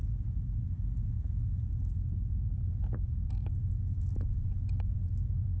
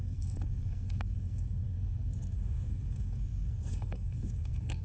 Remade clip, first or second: second